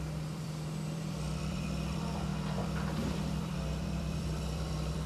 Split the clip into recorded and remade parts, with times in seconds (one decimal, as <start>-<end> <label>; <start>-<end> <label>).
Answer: 0.0-5.1 remade